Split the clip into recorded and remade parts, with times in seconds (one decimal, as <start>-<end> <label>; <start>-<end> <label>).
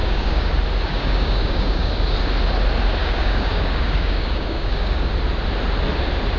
0.0-0.5 remade; 0.5-0.9 recorded; 0.9-1.9 remade; 1.9-3.0 recorded; 3.0-5.1 remade; 5.1-6.4 recorded